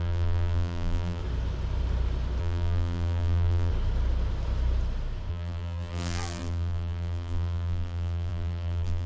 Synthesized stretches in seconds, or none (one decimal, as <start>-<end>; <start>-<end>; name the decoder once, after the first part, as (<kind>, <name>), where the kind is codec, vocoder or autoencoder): 0.0-1.2 (vocoder, BigVGAN v2); 2.4-3.7; 5.3-9.1

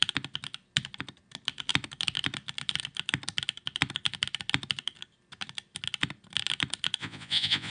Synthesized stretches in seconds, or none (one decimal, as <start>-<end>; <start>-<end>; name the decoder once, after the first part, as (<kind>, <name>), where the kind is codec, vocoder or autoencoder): 7.0-7.7 (vocoder, Vocos)

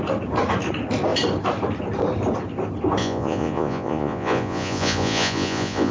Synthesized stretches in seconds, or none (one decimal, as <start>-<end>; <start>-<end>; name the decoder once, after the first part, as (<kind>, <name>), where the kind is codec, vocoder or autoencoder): 3.0-5.9 (vocoder, Vocos)